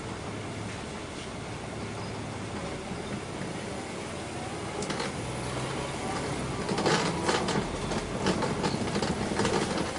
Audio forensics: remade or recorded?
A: recorded